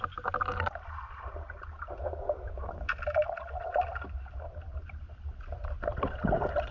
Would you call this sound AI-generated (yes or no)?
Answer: no